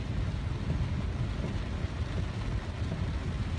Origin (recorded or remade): recorded